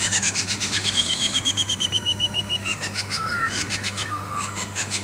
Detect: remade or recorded remade